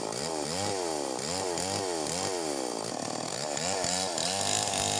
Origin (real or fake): real